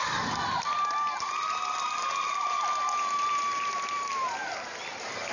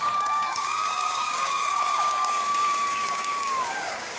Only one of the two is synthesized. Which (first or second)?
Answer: second